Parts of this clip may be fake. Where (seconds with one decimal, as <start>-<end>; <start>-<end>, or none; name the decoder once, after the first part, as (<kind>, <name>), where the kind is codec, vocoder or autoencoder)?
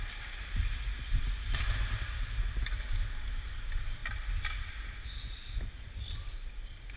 none